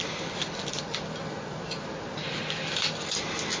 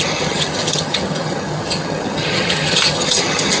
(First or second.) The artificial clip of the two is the second